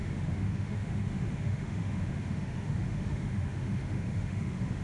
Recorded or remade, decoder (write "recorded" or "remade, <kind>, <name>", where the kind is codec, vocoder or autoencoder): remade, autoencoder, DAC-VAE